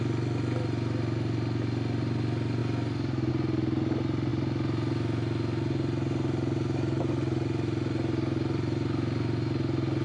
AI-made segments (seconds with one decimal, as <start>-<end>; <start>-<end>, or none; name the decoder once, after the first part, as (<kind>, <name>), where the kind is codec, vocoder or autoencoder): none